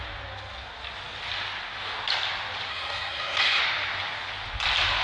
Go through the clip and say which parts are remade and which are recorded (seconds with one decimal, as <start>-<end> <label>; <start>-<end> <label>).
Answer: 0.0-2.7 recorded; 2.7-3.6 remade; 3.6-5.0 recorded

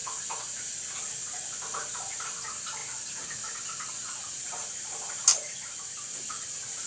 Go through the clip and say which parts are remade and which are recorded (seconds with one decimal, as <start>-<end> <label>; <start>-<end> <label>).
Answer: 0.0-5.3 recorded; 5.3-6.1 remade; 6.1-6.9 recorded

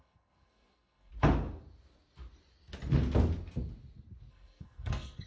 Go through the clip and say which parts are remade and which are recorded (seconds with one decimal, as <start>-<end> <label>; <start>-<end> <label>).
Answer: 0.0-1.1 remade; 1.1-4.3 recorded; 4.3-5.3 remade

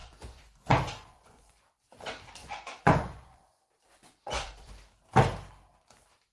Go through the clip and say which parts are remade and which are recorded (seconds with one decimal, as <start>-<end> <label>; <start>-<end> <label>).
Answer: 0.0-1.8 remade; 1.8-2.4 recorded; 2.4-3.6 remade; 3.6-4.0 recorded; 4.0-4.7 remade; 4.7-6.3 recorded

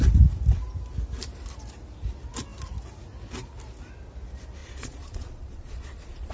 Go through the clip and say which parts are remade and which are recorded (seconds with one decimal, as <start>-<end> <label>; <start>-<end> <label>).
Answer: 0.0-4.6 recorded; 4.6-6.3 remade

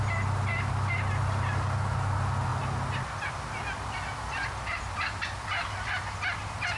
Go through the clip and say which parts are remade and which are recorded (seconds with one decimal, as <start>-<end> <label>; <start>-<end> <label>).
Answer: 0.0-6.8 recorded

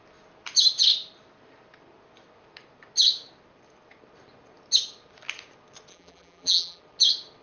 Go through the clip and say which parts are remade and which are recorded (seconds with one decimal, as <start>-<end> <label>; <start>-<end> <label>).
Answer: 0.0-5.9 recorded; 5.9-6.8 remade; 6.8-7.4 recorded

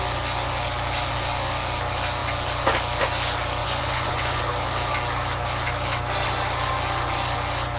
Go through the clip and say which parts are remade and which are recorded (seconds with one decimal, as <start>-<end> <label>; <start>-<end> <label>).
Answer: 0.0-3.6 recorded; 3.6-4.4 remade; 4.4-7.8 recorded